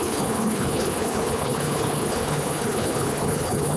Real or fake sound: fake